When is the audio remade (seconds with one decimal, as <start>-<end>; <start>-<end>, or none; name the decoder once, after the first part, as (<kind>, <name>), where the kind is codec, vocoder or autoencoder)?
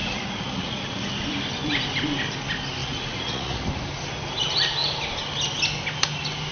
0.0-1.1 (vocoder, Vocos); 2.8-3.6